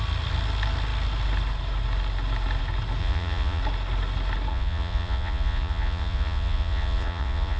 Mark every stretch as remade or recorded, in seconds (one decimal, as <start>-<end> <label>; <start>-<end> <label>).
0.0-3.0 recorded; 3.0-3.6 remade; 3.6-4.5 recorded; 4.5-7.6 remade